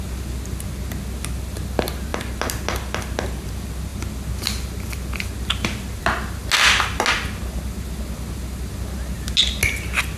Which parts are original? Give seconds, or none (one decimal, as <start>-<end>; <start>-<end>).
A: 0.0-10.2